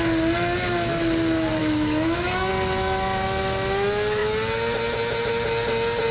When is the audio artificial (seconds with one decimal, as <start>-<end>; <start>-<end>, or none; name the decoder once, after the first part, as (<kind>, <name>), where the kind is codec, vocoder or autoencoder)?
1.6-2.5 (autoencoder, DAC-VAE)